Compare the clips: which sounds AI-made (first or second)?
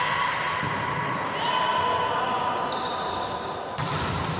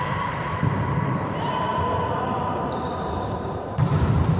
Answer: second